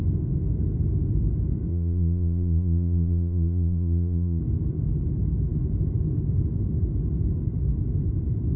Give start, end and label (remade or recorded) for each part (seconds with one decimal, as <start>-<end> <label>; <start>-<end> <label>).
0.0-1.7 recorded; 1.7-4.4 remade; 4.4-8.6 recorded